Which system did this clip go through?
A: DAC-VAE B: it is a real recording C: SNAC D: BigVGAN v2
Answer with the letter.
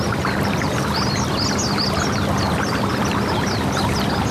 B